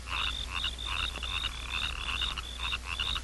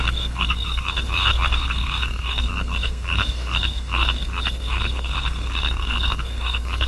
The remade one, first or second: second